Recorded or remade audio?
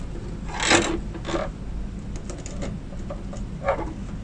recorded